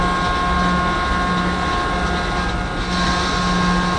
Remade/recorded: recorded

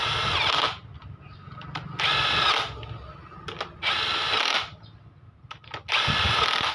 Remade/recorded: recorded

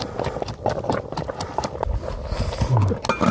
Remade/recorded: recorded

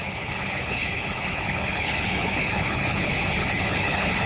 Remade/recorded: remade